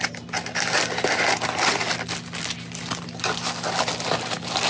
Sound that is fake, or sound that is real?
real